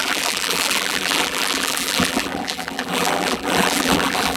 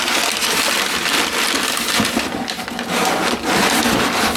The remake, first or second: first